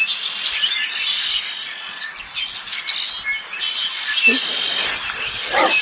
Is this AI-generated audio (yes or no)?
no